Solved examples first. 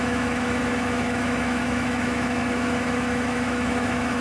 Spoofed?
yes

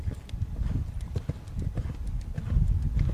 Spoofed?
no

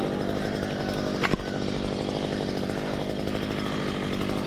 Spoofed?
no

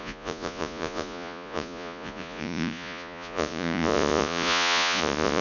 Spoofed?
yes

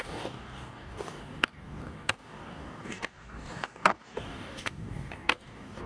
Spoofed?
yes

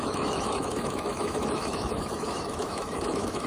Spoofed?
yes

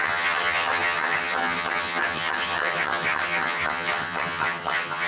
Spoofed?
yes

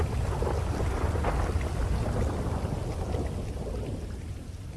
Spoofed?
no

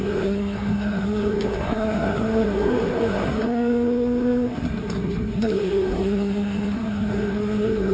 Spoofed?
yes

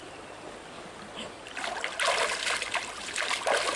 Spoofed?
no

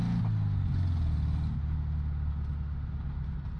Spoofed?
no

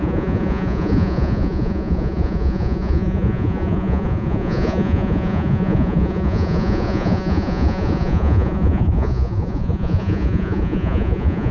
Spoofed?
yes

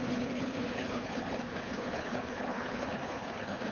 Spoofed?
yes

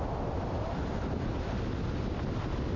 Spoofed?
no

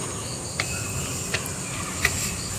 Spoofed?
no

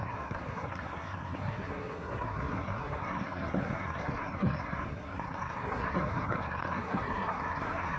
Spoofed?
yes